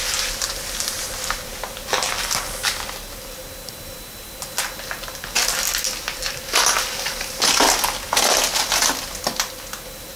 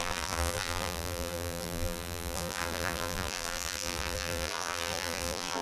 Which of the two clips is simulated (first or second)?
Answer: second